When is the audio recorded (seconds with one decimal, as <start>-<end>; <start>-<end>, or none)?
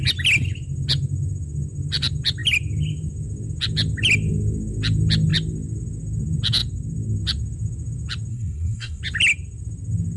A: 0.0-8.3; 9.0-10.2